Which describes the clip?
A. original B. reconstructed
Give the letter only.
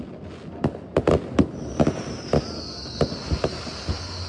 A